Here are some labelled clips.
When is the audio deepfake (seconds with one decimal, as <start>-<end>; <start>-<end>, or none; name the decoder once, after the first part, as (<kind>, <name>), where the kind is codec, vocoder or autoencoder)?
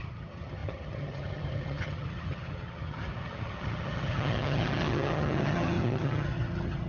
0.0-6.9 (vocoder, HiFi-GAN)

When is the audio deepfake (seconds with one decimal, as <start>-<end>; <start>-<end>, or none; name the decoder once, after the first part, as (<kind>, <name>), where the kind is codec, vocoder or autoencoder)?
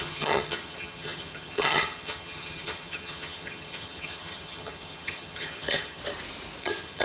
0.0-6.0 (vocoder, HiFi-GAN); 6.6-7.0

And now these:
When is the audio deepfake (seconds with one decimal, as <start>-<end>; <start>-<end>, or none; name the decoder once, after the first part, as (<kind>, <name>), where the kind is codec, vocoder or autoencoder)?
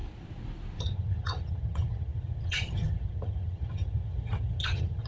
0.8-5.1 (vocoder, HiFi-GAN)